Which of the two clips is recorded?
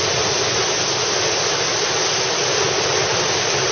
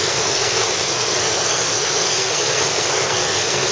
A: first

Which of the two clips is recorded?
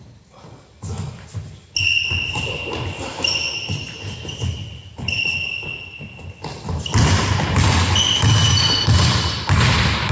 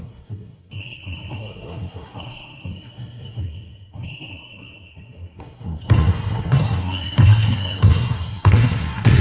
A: first